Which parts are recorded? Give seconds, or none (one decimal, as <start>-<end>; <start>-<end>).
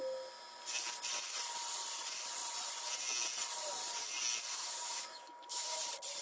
0.0-4.5; 5.8-6.2